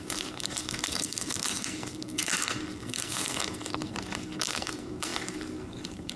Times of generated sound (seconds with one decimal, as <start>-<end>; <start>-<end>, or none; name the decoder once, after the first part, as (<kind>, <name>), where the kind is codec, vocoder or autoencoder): 0.0-6.2 (codec, SNAC)